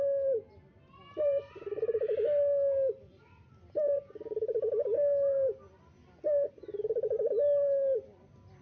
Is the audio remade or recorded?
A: recorded